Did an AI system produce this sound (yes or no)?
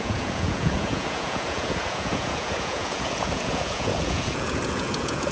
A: yes